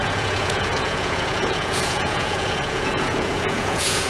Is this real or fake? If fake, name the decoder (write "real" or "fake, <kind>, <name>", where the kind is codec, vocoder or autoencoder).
fake, vocoder, Vocos